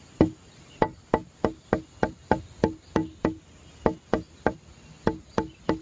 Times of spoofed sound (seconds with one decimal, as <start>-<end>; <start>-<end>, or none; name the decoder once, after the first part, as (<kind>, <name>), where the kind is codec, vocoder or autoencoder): none